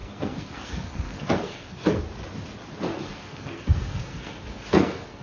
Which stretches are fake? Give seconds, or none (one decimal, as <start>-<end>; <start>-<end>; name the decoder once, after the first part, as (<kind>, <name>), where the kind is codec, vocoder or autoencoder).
0.0-2.0 (codec, SNAC); 2.9-5.2